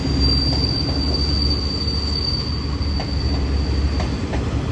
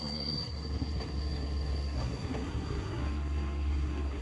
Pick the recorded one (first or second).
first